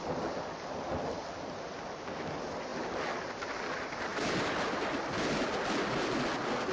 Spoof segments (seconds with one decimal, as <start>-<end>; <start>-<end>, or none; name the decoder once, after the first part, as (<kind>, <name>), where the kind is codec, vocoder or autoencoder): none